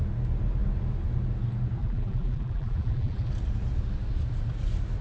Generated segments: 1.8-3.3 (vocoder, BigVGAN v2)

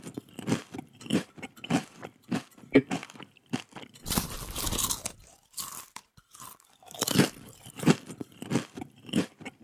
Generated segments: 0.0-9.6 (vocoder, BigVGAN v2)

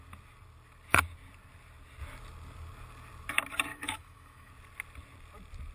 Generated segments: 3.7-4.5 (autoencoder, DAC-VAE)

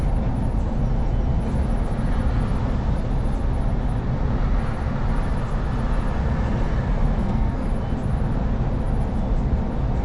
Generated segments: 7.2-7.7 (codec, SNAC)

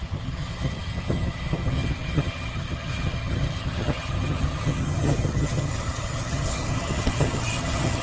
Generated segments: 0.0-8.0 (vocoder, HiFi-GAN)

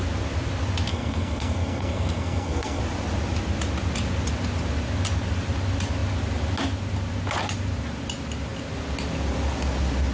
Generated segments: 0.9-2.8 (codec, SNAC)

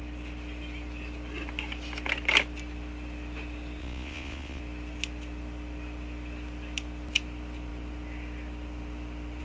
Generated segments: 3.8-4.6 (vocoder, Vocos)